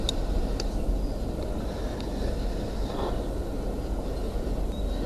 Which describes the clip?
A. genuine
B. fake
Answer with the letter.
A